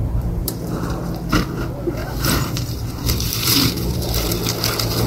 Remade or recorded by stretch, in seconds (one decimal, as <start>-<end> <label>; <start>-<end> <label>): 0.0-0.7 remade; 0.7-2.0 recorded; 2.0-4.3 remade; 4.3-5.1 recorded

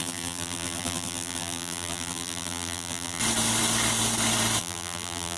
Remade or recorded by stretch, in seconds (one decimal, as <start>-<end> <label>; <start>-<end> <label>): 0.0-3.2 remade; 3.2-4.6 recorded; 4.6-5.4 remade

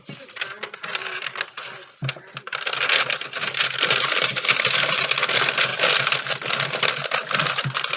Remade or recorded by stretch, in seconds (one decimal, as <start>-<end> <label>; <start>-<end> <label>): 0.0-8.0 recorded

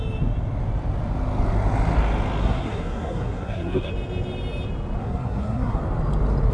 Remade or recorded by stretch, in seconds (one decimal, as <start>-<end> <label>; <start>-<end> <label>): 0.0-2.4 recorded; 2.4-3.9 remade; 3.9-5.0 recorded; 5.0-5.8 remade; 5.8-6.5 recorded

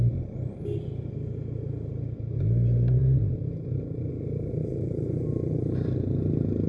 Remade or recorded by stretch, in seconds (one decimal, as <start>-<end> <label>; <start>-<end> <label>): 0.0-6.7 recorded